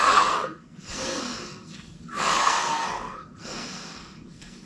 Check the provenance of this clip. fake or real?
fake